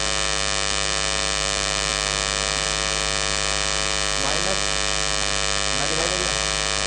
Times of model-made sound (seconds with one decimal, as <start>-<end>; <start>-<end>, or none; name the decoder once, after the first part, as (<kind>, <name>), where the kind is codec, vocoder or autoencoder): none